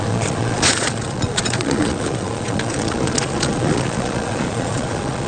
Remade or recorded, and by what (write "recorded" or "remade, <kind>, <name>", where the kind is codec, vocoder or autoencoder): remade, vocoder, Vocos